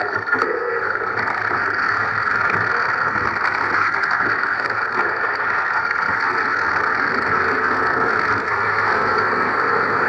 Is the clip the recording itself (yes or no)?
no